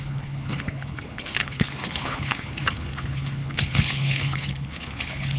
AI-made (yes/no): yes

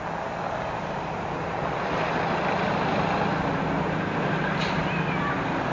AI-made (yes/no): no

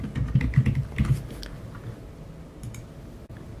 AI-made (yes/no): no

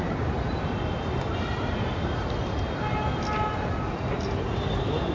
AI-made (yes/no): no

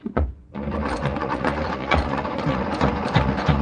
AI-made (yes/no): yes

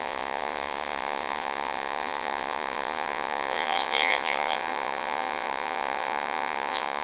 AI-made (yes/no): yes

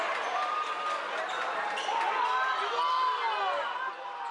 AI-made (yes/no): no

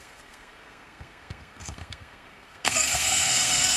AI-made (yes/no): yes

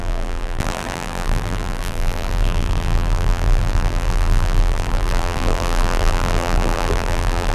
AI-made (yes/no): yes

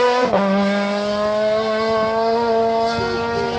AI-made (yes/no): no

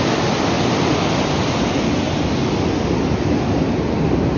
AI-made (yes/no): no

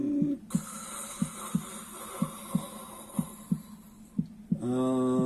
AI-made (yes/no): no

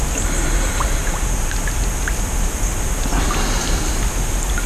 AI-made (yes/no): no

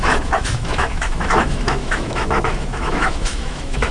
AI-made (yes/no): yes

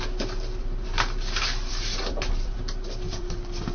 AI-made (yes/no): yes